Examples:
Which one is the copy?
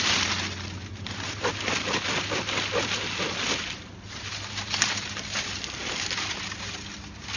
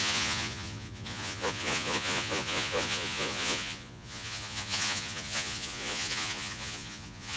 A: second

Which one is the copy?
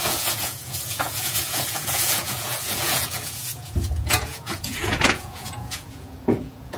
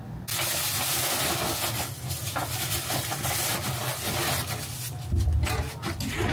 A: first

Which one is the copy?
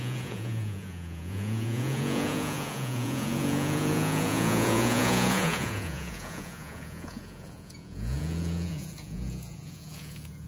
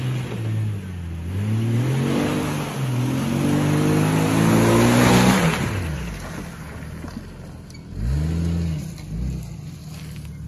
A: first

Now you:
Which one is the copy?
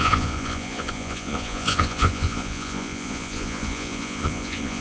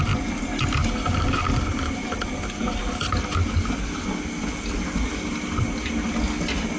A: first